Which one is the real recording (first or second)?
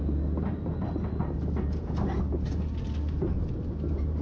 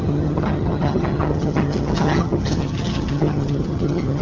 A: first